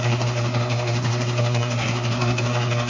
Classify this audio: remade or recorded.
remade